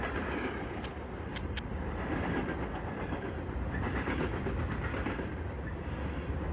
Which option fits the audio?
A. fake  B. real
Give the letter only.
B